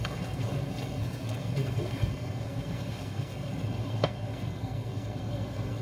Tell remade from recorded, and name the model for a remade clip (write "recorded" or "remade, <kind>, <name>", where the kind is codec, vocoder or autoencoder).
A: remade, codec, SNAC